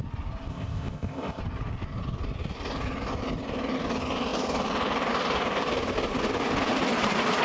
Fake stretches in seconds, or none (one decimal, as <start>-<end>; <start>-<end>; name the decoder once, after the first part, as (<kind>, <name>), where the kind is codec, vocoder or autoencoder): 0.5-1.4 (codec, ZipCodec)